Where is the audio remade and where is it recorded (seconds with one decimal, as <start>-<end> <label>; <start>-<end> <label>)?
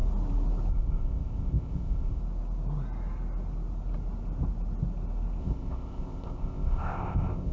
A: 0.0-0.7 recorded; 0.7-2.2 remade; 2.2-5.4 recorded; 5.4-7.5 remade